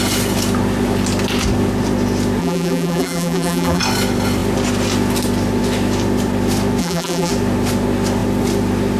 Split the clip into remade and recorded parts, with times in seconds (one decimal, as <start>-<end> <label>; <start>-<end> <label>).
0.0-2.4 recorded; 2.4-3.8 remade; 3.8-6.8 recorded; 6.8-7.3 remade; 7.3-9.0 recorded